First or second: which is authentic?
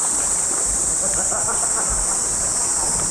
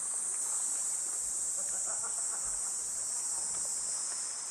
second